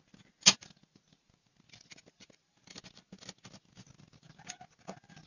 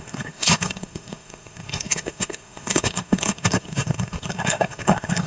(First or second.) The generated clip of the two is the second